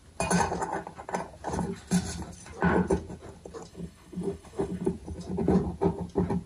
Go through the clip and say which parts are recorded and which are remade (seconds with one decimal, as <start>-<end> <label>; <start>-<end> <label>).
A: 0.0-3.7 recorded; 3.7-4.9 remade; 4.9-6.5 recorded